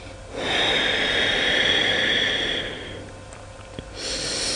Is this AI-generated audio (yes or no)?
no